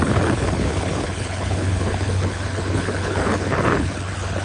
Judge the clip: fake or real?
fake